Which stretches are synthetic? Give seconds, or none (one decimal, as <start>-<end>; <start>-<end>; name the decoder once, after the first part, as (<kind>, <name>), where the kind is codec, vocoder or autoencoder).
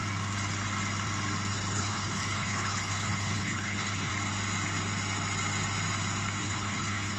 1.5-4.1 (codec, HILCodec); 6.4-7.2